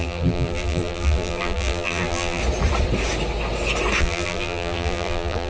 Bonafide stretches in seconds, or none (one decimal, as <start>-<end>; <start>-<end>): 2.4-4.0